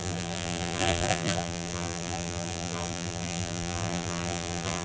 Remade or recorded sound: remade